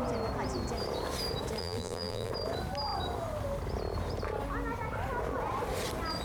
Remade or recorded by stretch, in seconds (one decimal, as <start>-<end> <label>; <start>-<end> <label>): 0.0-1.6 recorded; 1.6-2.3 remade; 2.3-6.2 recorded